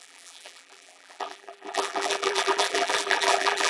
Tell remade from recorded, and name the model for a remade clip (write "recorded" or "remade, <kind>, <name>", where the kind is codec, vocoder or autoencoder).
remade, vocoder, BigVGAN v2